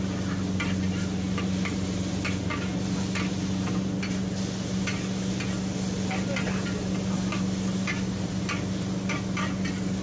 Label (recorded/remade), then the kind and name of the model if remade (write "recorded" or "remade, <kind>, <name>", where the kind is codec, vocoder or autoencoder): recorded